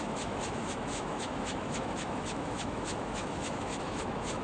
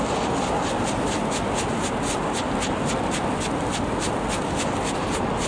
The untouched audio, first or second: second